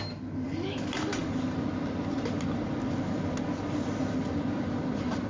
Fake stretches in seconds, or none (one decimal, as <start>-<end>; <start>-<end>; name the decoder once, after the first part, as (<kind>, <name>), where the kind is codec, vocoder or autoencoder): 0.0-5.3 (vocoder, BigVGAN v2)